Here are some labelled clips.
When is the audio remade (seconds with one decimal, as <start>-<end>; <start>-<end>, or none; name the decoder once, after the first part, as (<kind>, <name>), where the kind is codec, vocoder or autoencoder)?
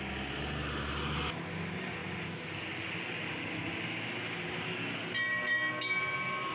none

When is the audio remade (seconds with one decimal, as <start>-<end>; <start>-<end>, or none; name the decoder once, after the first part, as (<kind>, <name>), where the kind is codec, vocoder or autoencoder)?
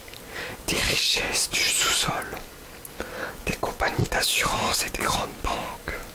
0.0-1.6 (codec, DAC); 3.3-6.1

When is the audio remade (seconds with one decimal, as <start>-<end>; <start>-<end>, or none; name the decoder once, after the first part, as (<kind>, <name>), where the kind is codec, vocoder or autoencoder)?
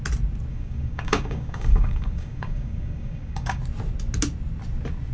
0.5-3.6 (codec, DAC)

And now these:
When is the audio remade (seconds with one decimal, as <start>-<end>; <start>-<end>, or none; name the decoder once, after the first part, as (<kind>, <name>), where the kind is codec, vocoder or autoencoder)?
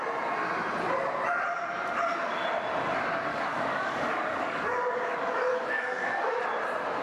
3.3-6.4 (codec, DAC)